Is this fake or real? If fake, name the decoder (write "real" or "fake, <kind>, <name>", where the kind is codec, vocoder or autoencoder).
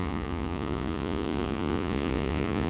fake, vocoder, Vocos